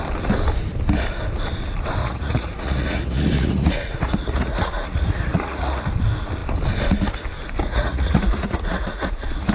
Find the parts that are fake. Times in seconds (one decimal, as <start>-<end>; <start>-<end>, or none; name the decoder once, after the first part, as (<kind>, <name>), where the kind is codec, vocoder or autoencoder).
2.0-5.8 (vocoder, Vocos); 7.7-9.5